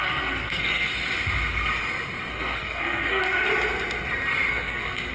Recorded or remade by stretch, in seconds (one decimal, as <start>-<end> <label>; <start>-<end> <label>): 0.0-0.9 remade; 0.9-2.3 recorded; 2.3-3.2 remade; 3.2-4.5 recorded; 4.5-5.1 remade